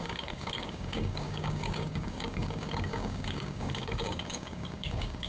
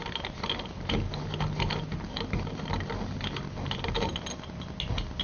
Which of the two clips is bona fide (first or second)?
second